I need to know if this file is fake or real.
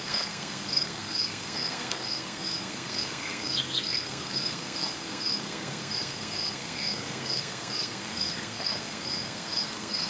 fake